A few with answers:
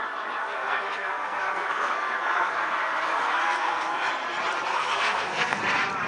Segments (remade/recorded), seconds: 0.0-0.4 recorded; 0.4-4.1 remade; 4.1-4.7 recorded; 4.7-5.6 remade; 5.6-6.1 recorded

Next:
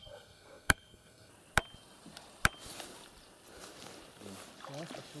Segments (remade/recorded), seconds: 0.0-1.3 remade; 1.3-5.2 recorded

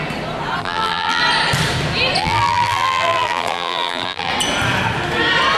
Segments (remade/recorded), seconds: 0.0-0.6 recorded; 0.6-1.2 remade; 1.2-2.2 recorded; 2.2-4.3 remade; 4.3-5.6 recorded

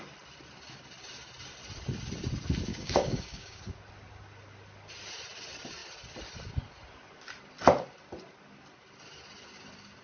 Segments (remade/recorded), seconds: 0.0-2.7 recorded; 2.7-3.6 remade; 3.6-10.0 recorded

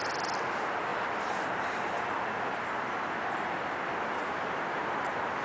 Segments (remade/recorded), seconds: 0.0-5.4 recorded

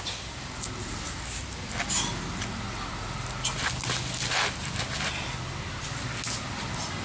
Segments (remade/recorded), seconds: 0.0-7.0 recorded

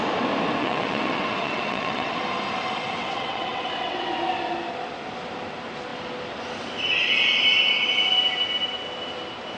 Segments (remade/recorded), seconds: 0.0-0.6 recorded; 0.6-2.2 remade; 2.2-3.0 recorded; 3.0-4.1 remade; 4.1-9.6 recorded